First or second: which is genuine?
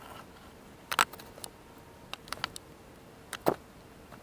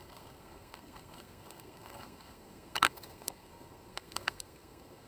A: first